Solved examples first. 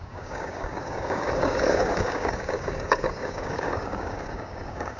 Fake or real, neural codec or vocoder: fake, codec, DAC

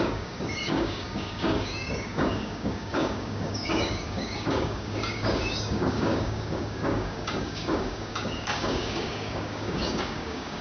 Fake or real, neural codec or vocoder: fake, codec, DAC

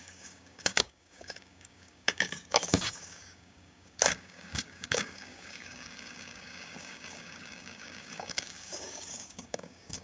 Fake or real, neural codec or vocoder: fake, codec, DAC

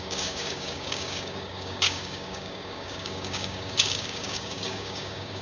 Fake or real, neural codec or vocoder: fake, codec, DAC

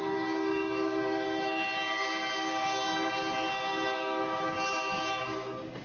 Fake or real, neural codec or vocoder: fake, codec, DAC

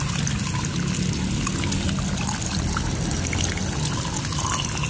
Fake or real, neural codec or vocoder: real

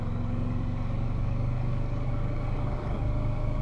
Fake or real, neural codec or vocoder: fake, codec, DAC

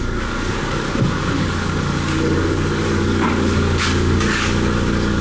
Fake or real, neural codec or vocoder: fake, codec, DAC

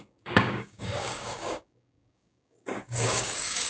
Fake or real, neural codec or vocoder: fake, codec, DAC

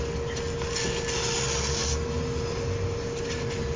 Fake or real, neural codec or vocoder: real